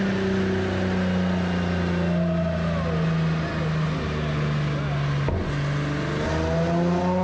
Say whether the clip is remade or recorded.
recorded